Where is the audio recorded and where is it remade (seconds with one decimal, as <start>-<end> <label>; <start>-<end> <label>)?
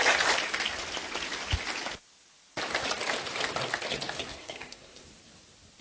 0.0-4.3 recorded; 4.3-5.1 remade; 5.1-5.8 recorded